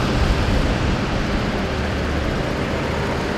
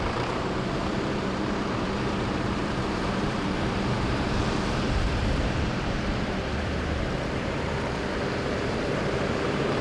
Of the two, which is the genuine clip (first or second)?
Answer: first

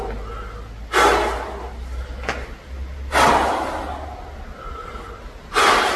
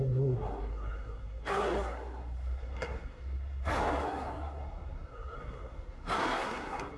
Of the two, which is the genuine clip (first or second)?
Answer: first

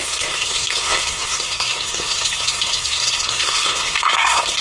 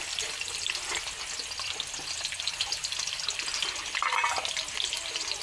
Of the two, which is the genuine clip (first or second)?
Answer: second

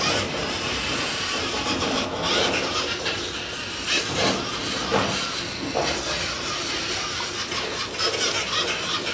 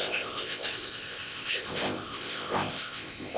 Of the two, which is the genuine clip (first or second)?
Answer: first